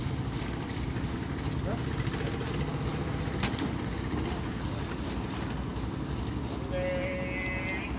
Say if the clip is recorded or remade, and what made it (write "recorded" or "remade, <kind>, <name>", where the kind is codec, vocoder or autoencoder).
recorded